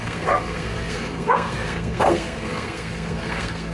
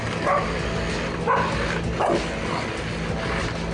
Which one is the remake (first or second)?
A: first